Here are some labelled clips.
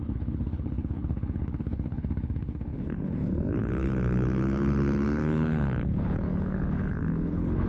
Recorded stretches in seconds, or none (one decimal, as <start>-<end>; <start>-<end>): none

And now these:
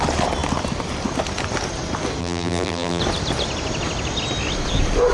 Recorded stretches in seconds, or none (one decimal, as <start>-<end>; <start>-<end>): 0.0-2.2; 3.0-5.1

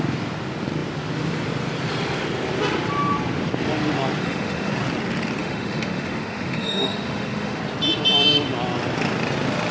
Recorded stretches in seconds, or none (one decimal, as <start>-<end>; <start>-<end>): 0.0-4.2; 4.7-5.4; 7.6-9.7

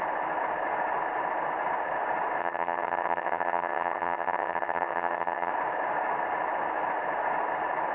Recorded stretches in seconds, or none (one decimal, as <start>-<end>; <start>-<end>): 0.0-2.4; 5.5-7.9

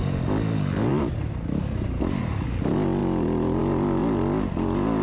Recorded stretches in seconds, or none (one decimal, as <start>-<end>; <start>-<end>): 0.0-5.0

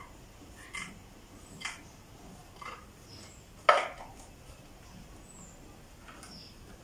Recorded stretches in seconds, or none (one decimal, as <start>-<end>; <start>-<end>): 0.0-6.8

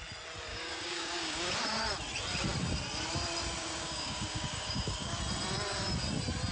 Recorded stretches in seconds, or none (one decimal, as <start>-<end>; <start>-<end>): 0.0-0.5; 1.5-3.6; 5.2-6.5

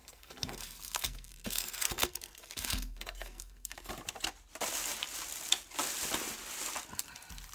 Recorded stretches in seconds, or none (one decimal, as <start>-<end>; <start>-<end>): 3.9-7.5